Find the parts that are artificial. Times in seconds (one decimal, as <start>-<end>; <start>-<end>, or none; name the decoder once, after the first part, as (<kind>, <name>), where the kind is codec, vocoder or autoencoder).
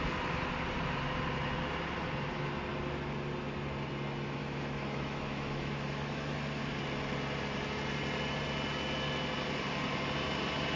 4.4-6.6 (autoencoder, DAC-VAE)